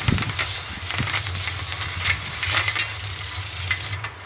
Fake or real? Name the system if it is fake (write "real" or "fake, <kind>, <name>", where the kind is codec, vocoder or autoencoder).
real